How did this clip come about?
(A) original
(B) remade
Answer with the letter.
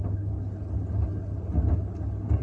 A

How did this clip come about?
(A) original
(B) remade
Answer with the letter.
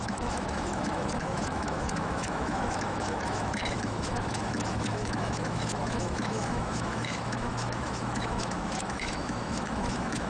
B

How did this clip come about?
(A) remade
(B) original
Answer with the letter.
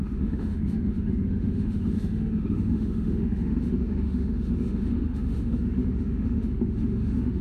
A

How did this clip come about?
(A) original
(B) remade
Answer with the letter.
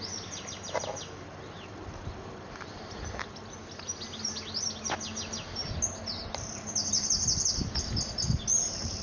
A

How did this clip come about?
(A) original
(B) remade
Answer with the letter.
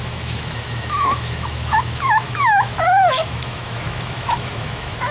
B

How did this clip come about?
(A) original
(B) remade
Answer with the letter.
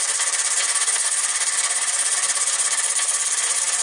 A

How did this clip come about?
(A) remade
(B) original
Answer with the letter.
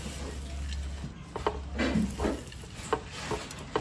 B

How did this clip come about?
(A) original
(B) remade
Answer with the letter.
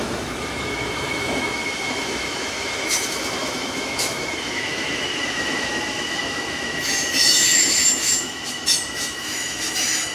B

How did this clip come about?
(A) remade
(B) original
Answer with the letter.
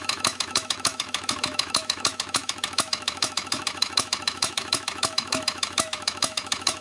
A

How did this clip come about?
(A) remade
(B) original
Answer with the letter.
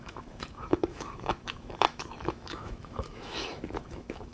A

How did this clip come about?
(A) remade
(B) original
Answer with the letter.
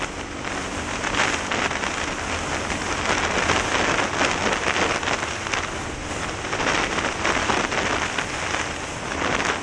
B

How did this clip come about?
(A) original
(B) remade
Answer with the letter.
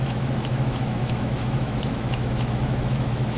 B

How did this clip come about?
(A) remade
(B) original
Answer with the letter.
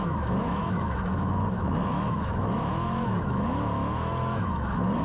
A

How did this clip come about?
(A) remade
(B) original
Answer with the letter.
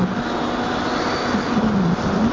B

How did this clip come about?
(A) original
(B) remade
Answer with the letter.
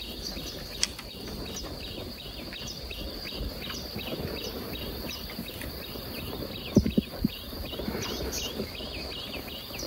A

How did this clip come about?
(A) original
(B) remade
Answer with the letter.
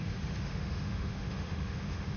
B